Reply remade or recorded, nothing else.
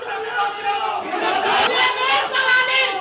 recorded